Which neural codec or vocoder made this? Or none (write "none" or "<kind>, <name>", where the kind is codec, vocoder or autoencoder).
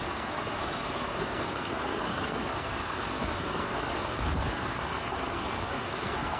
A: codec, SNAC